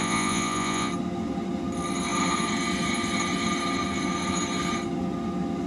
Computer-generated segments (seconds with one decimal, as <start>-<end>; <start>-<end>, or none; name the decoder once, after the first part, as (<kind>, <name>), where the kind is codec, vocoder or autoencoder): 0.0-0.9 (vocoder, Vocos)